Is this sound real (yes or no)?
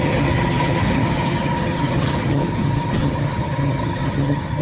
no